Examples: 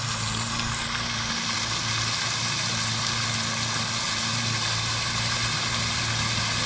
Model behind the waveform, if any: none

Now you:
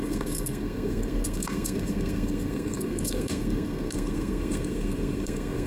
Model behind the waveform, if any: codec, SNAC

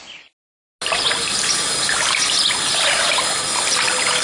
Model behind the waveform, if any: none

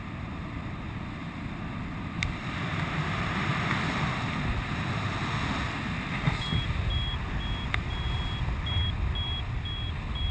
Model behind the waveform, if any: none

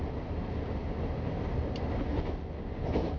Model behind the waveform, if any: none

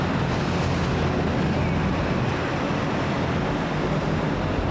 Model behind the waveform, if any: none